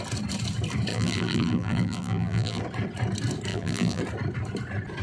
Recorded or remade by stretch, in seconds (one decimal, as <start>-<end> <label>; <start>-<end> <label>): 0.0-0.9 recorded; 0.9-2.6 remade; 2.6-3.5 recorded; 3.5-4.0 remade; 4.0-5.0 recorded